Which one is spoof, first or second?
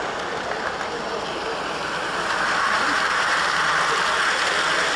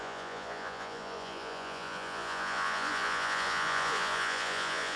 second